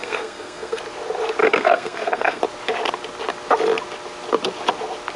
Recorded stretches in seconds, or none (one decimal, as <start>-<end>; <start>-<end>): 0.8-1.4; 2.4-5.2

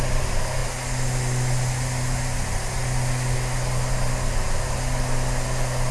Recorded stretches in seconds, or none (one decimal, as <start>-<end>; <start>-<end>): 0.0-5.9

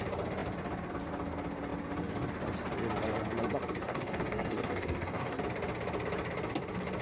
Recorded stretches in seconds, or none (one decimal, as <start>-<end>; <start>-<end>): 0.0-3.8; 5.4-7.0

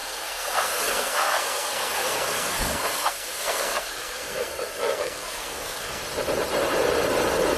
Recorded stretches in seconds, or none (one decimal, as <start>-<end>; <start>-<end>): 6.0-7.6

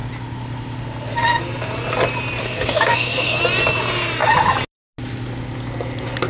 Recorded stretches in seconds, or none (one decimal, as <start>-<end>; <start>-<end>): 0.0-2.4; 3.4-6.3